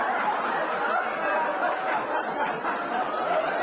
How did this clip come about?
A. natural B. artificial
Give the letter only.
A